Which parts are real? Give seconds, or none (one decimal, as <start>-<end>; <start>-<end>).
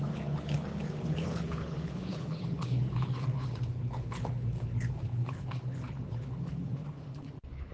none